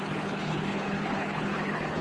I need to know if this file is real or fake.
fake